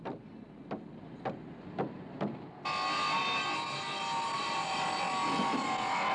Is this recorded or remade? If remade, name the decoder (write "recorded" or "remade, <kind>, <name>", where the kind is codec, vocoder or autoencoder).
recorded